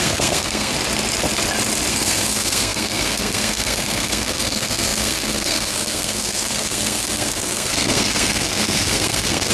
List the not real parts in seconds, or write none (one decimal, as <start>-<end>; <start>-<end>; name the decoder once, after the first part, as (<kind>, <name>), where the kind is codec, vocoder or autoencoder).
0.0-0.7 (codec, SNAC); 1.9-9.5